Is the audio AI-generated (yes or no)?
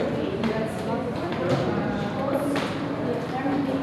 yes